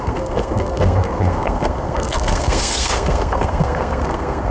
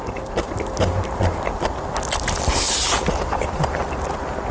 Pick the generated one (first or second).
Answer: first